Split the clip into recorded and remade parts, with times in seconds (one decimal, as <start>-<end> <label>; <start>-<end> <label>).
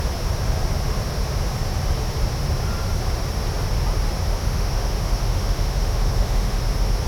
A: 0.0-4.3 recorded; 4.3-6.6 remade; 6.6-7.1 recorded